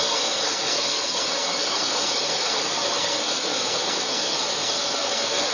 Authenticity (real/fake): fake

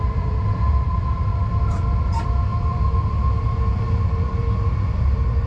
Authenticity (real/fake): fake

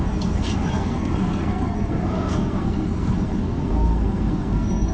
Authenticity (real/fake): fake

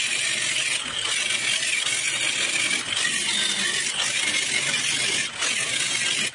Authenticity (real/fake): real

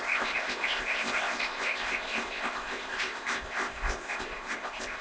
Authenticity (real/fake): fake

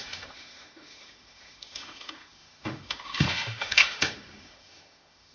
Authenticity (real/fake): fake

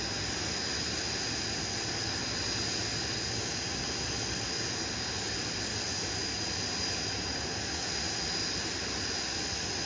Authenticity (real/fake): real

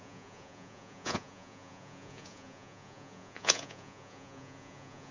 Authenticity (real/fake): fake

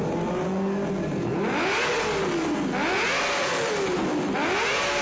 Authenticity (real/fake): real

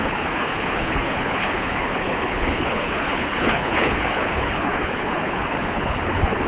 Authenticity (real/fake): fake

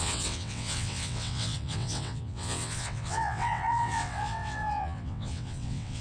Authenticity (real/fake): fake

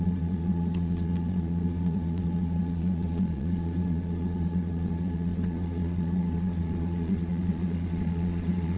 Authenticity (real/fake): fake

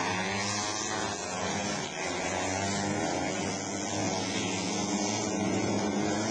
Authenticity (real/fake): real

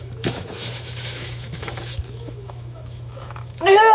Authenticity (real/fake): fake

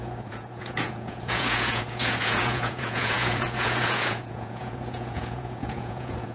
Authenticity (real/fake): fake